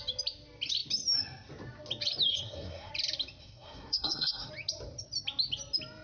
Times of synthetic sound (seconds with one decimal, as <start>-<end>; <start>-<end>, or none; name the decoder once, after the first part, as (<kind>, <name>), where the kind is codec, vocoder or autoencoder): 2.3-2.9 (codec, SNAC); 3.4-4.5